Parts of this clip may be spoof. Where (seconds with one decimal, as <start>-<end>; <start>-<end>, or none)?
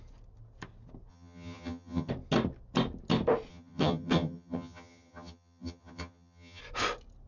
1.1-2.1; 3.5-6.6